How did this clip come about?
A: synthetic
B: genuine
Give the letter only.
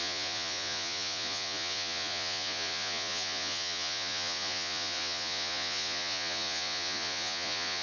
A